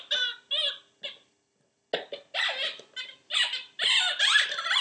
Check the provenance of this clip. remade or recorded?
recorded